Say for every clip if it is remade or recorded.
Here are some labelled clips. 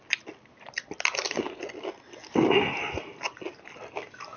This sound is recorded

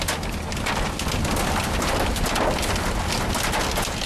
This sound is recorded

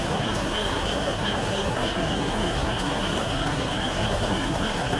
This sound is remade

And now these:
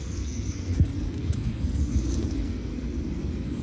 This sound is remade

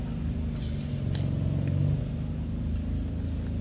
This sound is recorded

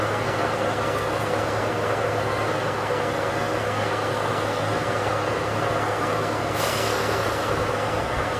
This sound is remade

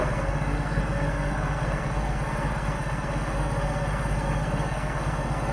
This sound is remade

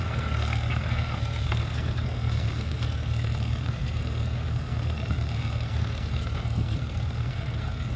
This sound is remade